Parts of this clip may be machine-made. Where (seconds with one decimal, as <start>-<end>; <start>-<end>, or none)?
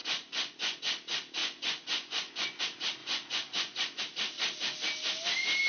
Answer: 0.0-0.8; 1.4-2.6; 3.0-4.0